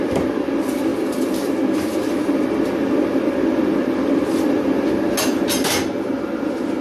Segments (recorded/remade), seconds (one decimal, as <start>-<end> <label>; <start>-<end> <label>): 0.0-6.8 recorded

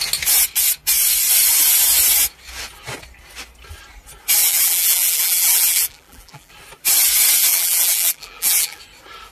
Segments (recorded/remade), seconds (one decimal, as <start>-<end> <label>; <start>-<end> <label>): 0.0-4.4 recorded; 4.4-6.5 remade; 6.5-7.5 recorded; 7.5-8.8 remade; 8.8-9.3 recorded

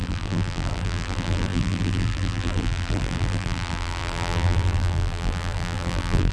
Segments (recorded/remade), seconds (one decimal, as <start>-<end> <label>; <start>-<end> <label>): 0.0-6.3 remade